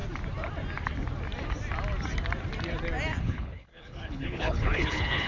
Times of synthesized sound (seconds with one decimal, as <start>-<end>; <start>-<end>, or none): 3.2-5.3